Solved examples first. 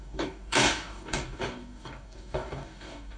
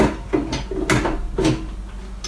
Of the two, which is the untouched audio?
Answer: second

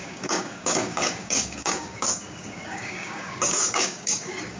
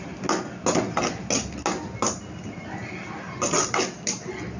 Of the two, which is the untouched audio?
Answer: second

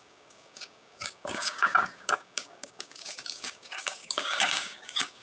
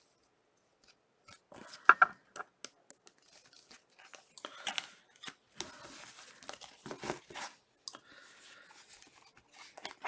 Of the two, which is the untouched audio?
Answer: second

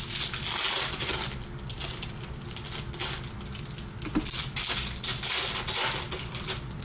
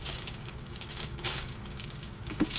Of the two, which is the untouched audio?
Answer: first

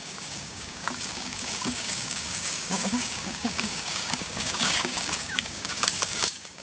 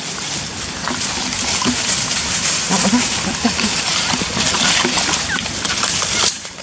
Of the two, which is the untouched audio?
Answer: second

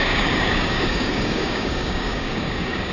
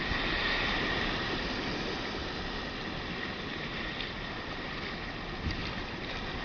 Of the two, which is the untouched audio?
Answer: second